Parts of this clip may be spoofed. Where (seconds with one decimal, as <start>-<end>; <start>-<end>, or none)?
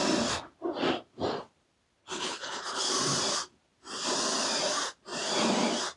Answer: 2.0-2.9